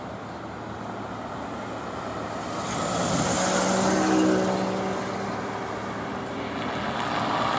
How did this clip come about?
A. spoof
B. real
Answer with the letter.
B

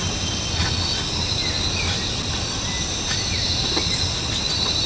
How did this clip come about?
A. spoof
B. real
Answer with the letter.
B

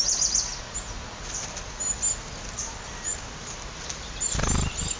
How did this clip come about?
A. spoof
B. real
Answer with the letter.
B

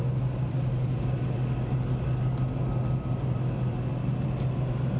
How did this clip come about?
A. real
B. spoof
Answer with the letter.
A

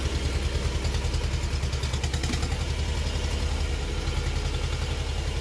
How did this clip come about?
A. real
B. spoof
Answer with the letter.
A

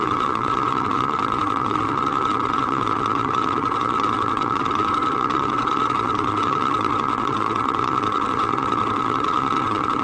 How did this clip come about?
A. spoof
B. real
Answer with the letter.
A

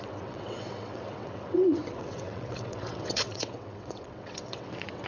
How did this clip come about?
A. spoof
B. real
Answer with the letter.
A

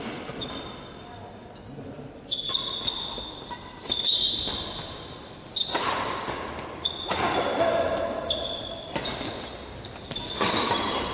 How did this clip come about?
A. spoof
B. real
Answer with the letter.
B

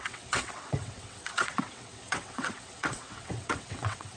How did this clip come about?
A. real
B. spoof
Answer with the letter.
B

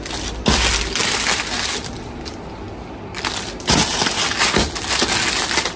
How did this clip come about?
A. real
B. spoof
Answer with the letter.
A